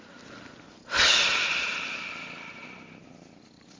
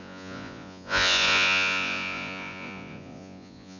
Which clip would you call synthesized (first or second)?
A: second